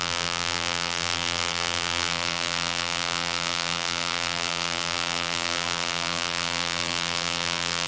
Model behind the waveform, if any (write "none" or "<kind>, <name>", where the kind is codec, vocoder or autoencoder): vocoder, BigVGAN v2